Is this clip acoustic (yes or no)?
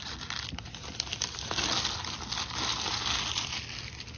yes